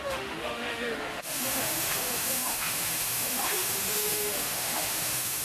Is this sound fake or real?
fake